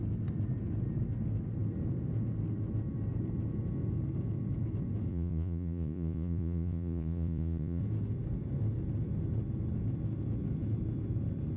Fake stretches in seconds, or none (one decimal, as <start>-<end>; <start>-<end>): 5.1-7.8